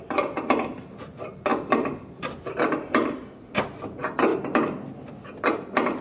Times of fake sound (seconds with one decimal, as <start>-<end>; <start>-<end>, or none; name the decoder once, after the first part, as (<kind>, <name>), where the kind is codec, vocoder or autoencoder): none